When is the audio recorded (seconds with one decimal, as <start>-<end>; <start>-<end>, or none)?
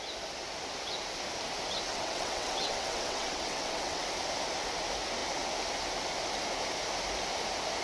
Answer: 0.0-1.9; 4.0-7.8